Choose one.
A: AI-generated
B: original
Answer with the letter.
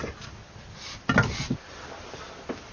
B